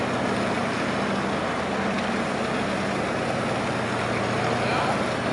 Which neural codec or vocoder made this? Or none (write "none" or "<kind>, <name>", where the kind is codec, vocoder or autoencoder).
none